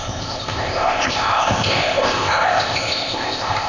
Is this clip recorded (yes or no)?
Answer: no